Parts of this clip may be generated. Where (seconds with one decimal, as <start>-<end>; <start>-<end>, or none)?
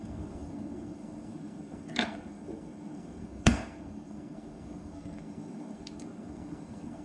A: 0.0-7.0